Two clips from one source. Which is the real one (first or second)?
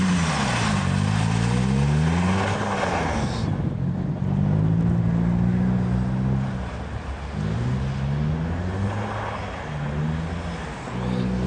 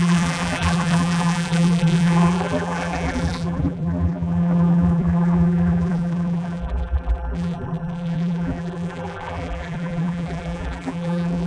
first